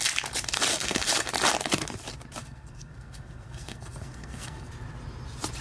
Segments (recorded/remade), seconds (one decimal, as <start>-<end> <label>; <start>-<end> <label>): 0.0-0.7 recorded; 0.7-1.3 remade; 1.3-2.4 recorded; 2.4-4.7 remade; 4.7-5.6 recorded